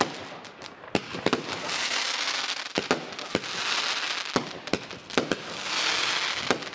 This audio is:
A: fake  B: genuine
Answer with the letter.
B